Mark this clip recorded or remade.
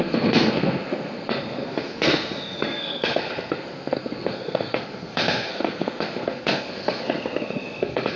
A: remade